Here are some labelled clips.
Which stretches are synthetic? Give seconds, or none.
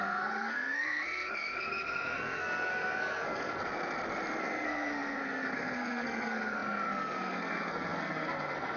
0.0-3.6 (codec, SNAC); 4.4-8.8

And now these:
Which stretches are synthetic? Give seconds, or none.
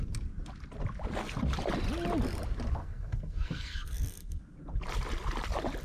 2.8-4.4 (codec, SNAC)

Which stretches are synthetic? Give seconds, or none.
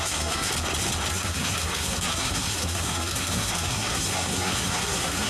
0.0-0.5 (codec, SNAC); 1.1-5.3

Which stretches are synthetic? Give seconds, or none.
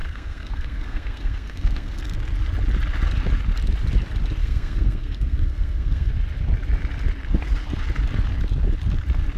0.0-2.0 (codec, SNAC); 4.4-6.1